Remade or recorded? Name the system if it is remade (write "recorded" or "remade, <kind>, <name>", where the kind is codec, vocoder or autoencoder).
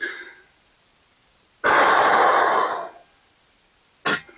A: recorded